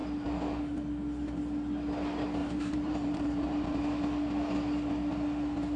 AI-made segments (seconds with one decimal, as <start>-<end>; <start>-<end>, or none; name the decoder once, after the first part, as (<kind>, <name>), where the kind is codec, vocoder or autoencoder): 2.4-3.8 (vocoder, BigVGAN v2)